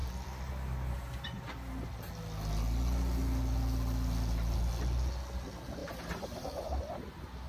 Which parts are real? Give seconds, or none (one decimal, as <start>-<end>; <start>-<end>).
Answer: 0.0-5.8